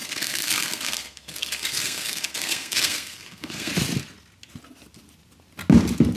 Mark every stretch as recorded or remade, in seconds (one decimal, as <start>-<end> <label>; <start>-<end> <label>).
0.0-3.7 remade; 3.7-6.2 recorded